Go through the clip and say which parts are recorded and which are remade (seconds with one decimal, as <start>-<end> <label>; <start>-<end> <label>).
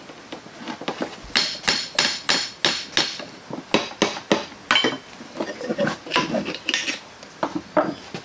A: 0.0-8.2 recorded